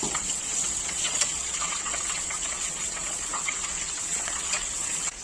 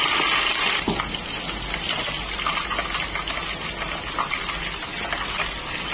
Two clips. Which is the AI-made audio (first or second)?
first